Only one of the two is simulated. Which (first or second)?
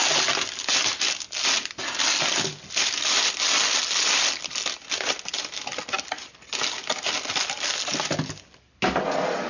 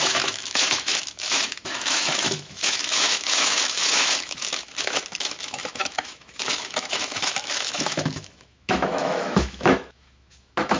second